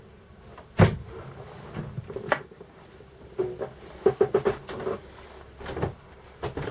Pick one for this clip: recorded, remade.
recorded